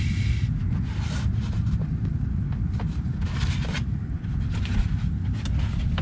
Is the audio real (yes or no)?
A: yes